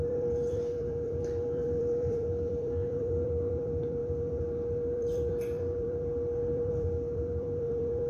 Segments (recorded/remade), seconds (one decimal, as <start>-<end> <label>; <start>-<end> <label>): 0.0-8.1 remade